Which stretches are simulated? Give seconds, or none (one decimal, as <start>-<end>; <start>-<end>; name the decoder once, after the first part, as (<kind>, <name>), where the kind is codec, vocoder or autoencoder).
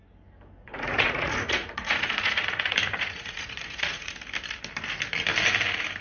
0.6-4.1 (vocoder, Vocos)